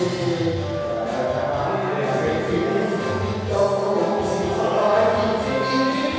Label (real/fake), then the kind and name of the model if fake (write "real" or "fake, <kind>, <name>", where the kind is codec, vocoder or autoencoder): real